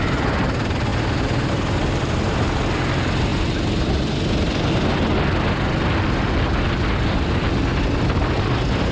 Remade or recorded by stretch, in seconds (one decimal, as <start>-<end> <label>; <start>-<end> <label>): 0.0-8.9 recorded